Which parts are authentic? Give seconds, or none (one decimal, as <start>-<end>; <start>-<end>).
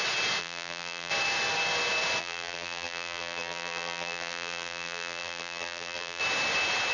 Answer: 0.0-0.4; 1.1-2.2; 6.2-6.9